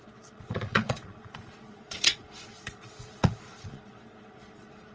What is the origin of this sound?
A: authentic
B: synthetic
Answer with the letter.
B